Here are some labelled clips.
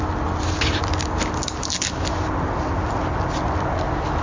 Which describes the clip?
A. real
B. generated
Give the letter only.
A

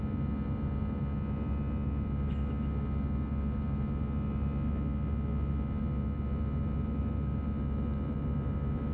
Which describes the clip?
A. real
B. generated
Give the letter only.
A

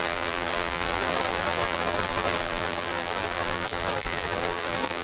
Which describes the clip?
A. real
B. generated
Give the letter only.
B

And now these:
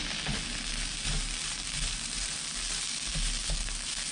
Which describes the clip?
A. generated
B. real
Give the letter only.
B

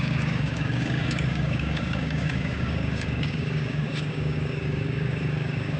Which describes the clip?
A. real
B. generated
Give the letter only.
B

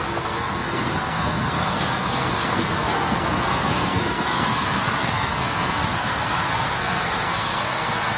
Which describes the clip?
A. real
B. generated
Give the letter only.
B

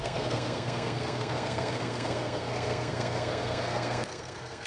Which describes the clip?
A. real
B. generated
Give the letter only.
B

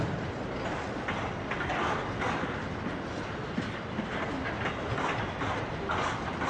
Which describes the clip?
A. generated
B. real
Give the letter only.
B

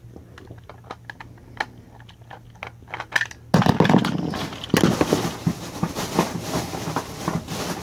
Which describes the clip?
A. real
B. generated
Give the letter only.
A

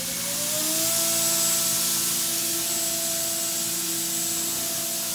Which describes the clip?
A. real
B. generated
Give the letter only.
A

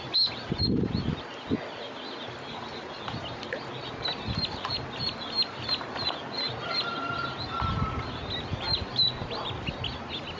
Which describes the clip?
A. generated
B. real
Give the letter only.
B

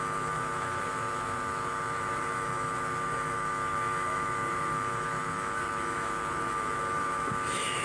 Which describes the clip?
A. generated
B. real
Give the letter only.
A